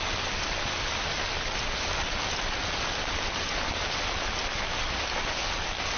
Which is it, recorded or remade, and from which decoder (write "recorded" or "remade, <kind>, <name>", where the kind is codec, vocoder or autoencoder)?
recorded